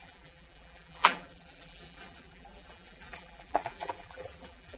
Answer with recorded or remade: remade